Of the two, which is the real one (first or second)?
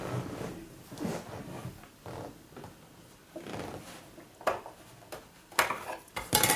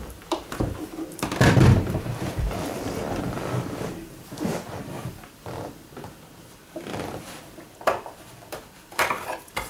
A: first